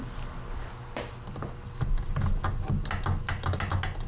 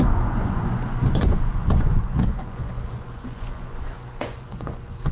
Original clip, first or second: first